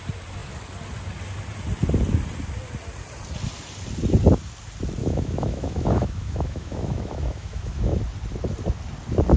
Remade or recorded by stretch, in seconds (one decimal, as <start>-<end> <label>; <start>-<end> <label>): 0.0-5.0 recorded; 5.0-8.0 remade; 8.0-9.4 recorded